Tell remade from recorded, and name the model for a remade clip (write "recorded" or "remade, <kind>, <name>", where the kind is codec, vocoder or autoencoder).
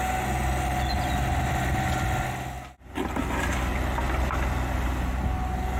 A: recorded